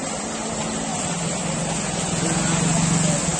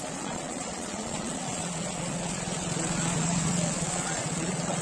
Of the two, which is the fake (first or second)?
second